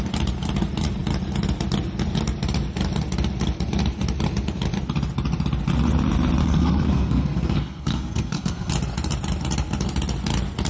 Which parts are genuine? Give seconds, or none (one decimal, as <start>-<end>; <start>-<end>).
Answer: 0.0-6.4; 8.7-10.7